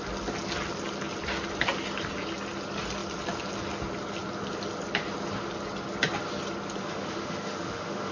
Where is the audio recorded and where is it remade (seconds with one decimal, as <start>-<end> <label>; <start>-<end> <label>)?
0.0-6.8 recorded; 6.8-8.1 remade